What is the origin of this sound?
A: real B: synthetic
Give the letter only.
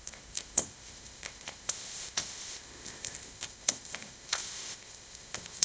B